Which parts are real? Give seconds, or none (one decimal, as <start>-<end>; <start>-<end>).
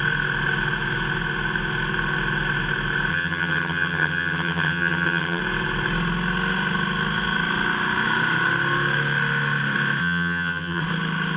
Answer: 0.0-3.1; 5.4-10.0; 10.8-11.4